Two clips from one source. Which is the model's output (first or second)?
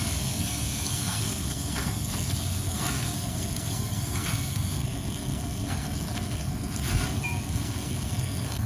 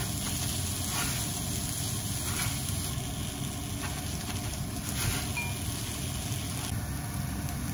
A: first